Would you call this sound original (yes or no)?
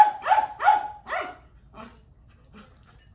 yes